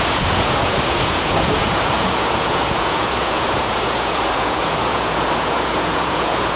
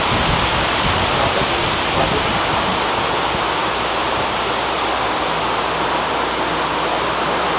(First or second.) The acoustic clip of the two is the second